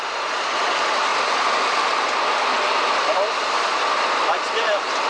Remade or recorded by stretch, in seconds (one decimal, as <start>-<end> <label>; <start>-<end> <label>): 0.0-1.1 remade; 1.1-2.9 recorded; 2.9-5.1 remade